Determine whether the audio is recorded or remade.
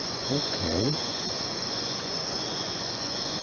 remade